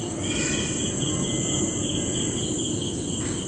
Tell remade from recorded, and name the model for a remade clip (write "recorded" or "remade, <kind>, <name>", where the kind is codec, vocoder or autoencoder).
recorded